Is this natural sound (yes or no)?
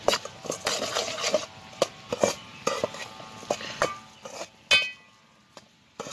yes